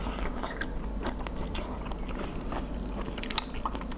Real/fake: real